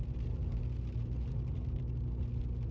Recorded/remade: recorded